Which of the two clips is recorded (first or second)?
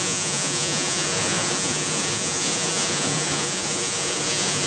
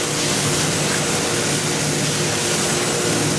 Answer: second